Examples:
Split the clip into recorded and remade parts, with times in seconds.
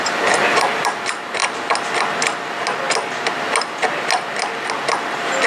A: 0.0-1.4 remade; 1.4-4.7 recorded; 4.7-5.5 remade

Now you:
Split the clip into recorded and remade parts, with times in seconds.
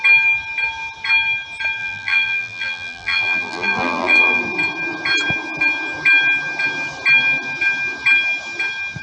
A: 0.0-1.8 recorded; 1.8-4.4 remade; 4.4-9.0 recorded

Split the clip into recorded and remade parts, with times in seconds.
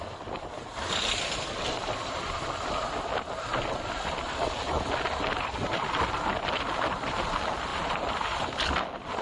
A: 0.0-7.7 recorded; 7.7-8.6 remade; 8.6-9.2 recorded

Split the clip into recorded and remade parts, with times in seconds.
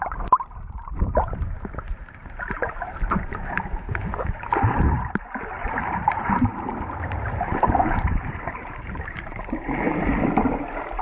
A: 0.0-6.7 remade; 6.7-7.3 recorded; 7.3-11.0 remade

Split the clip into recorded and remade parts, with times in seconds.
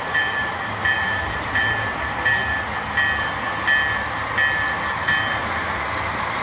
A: 0.0-2.4 remade; 2.4-5.3 recorded; 5.3-6.4 remade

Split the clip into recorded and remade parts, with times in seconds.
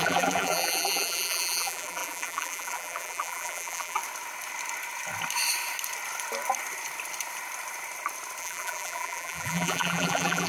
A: 0.0-4.0 remade; 4.0-8.4 recorded; 8.4-10.5 remade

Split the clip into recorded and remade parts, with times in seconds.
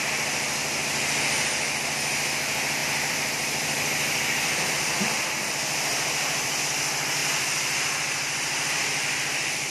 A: 0.0-2.8 recorded; 2.8-6.6 remade; 6.6-7.2 recorded; 7.2-9.7 remade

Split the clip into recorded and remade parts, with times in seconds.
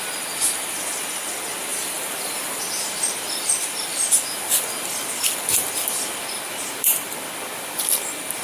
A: 0.0-1.7 recorded; 1.7-2.6 remade; 2.6-8.4 recorded